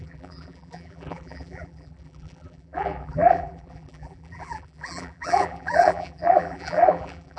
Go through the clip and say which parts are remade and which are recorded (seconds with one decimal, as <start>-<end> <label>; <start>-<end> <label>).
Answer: 0.0-7.4 remade